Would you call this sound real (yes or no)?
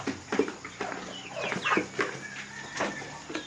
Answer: yes